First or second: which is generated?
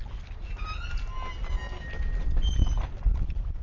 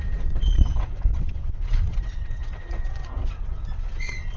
second